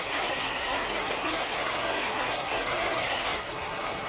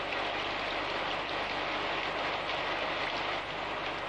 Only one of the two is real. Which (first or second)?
second